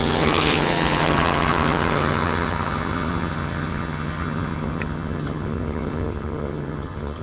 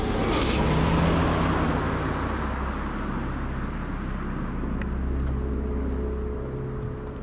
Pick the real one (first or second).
second